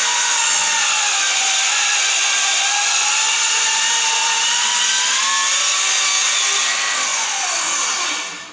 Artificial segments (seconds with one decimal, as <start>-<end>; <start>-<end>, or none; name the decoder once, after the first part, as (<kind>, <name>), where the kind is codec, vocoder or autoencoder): 0.0-4.7 (vocoder, Vocos); 7.1-7.8